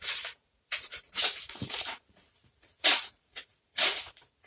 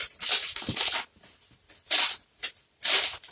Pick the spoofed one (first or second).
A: first